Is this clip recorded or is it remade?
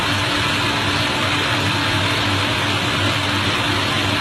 recorded